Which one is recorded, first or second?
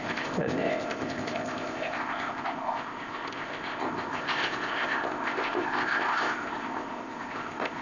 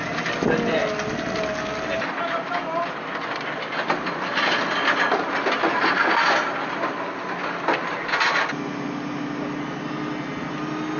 second